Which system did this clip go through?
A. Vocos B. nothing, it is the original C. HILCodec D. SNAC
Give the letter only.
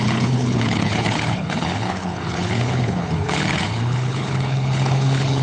C